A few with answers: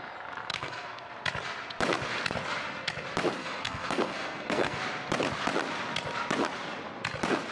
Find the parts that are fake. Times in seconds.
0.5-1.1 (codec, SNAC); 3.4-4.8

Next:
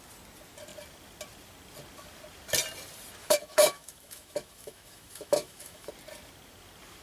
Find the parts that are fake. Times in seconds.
3.2-5.9 (autoencoder, DAC-VAE)

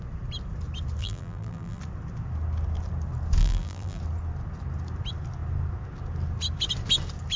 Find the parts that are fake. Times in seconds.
1.0-1.8 (vocoder, BigVGAN v2); 3.4-4.0

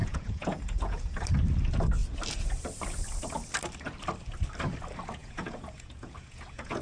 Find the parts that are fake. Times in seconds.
0.0-1.2 (vocoder, Vocos); 5.2-6.8

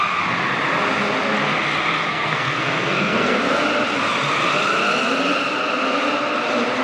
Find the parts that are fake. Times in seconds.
2.1-3.4 (codec, SNAC)

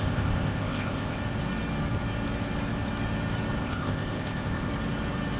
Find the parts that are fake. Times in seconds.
0.0-1.2 (codec, ZipCodec); 3.6-4.7